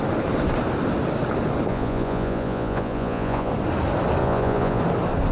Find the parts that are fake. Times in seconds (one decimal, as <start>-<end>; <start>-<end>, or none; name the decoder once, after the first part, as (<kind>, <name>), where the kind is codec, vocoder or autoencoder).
1.7-3.5 (vocoder, Vocos); 4.2-4.8